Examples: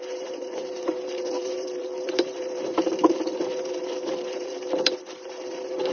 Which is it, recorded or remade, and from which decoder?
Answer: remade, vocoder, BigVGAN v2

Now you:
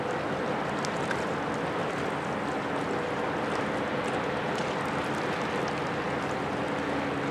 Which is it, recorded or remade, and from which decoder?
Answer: recorded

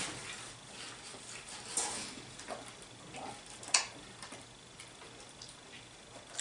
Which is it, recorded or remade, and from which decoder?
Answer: recorded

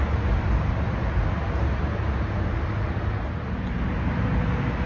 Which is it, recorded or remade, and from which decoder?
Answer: recorded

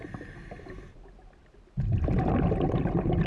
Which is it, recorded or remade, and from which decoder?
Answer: recorded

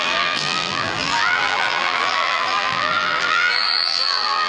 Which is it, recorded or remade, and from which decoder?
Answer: remade, vocoder, BigVGAN v2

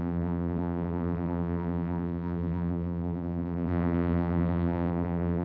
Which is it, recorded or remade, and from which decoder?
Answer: remade, vocoder, BigVGAN v2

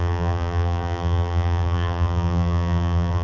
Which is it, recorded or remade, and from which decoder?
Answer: remade, vocoder, BigVGAN v2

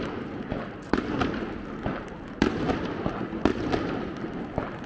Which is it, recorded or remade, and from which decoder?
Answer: recorded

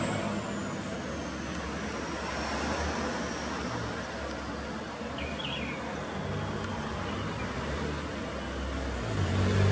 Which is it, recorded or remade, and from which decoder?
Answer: recorded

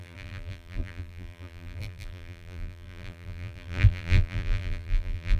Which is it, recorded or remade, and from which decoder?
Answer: remade, vocoder, BigVGAN v2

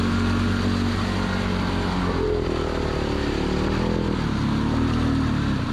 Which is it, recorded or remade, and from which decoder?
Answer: recorded